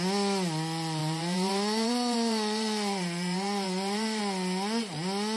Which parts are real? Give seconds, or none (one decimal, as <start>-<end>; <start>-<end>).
0.0-1.0; 4.2-5.4